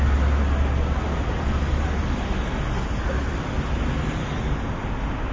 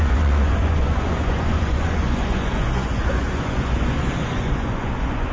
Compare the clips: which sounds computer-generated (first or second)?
second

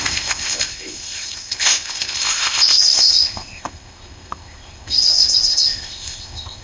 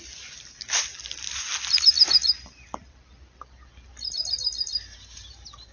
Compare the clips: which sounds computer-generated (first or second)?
first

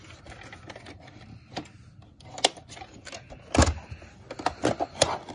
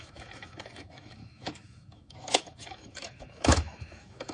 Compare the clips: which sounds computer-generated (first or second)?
second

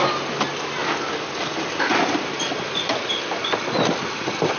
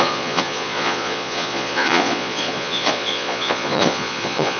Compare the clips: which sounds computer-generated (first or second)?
second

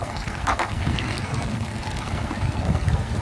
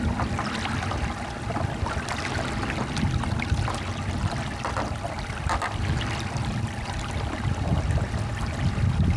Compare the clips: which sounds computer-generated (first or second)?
first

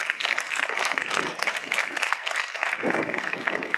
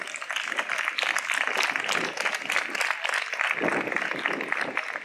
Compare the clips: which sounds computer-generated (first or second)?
first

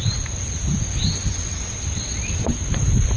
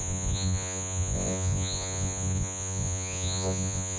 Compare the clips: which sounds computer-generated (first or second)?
second